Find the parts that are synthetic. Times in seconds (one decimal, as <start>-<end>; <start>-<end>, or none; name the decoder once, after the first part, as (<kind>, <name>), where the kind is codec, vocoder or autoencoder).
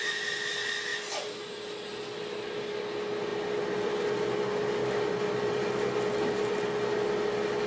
none